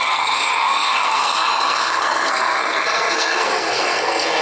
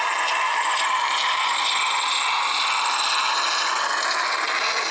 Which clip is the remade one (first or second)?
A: first